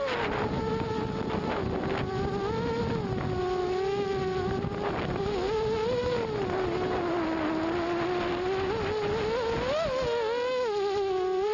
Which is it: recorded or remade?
recorded